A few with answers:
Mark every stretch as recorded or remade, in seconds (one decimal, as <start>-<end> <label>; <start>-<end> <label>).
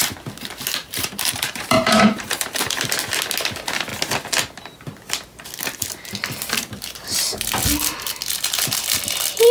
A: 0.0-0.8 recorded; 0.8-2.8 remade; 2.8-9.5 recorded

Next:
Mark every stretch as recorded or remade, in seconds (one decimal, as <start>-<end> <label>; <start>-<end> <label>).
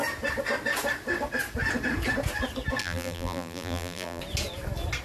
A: 0.0-2.8 recorded; 2.8-4.2 remade; 4.2-5.0 recorded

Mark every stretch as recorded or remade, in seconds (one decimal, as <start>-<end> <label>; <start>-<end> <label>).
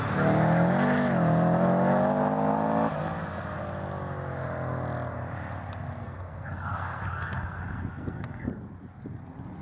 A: 0.0-6.0 recorded; 6.0-8.5 remade; 8.5-9.6 recorded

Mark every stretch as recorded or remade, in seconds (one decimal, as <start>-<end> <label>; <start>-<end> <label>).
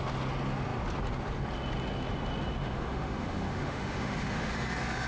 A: 0.0-2.6 recorded; 2.6-4.5 remade; 4.5-5.1 recorded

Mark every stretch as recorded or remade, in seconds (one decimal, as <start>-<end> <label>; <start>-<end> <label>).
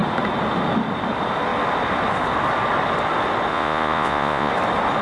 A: 0.0-3.5 recorded; 3.5-4.5 remade; 4.5-5.0 recorded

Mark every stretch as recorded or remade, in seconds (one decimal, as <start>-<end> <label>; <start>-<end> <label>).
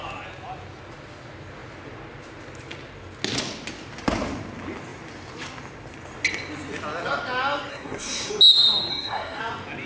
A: 0.0-7.7 recorded; 7.7-8.3 remade; 8.3-8.9 recorded; 8.9-9.4 remade; 9.4-9.9 recorded